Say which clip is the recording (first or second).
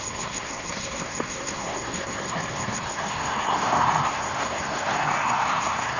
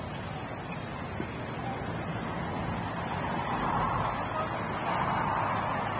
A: second